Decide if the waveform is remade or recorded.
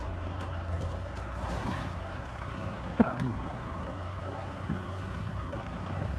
remade